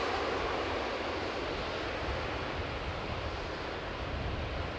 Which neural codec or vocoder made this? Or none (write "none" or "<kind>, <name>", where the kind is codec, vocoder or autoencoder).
none